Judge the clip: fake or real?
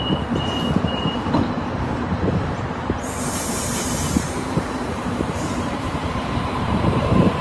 fake